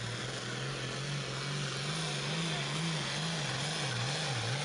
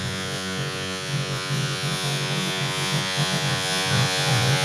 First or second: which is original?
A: first